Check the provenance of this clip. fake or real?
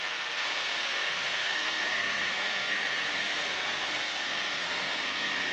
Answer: fake